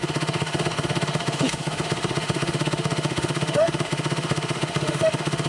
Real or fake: fake